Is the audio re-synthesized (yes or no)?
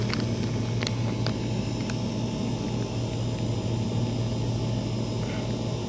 no